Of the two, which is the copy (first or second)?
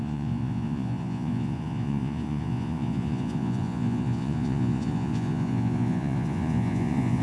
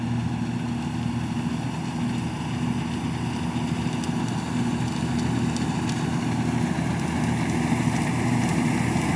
first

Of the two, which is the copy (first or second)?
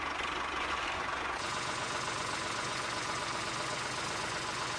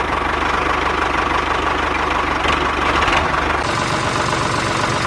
first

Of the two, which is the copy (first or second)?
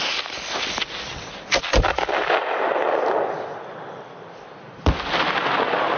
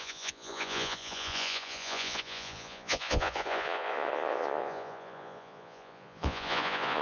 second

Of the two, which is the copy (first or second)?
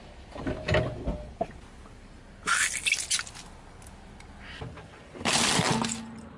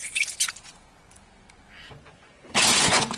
second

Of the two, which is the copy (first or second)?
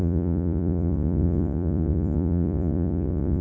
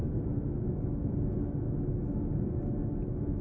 first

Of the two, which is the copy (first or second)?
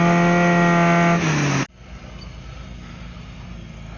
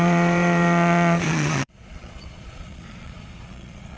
second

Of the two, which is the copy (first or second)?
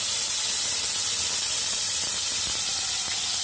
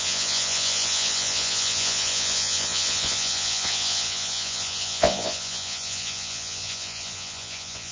second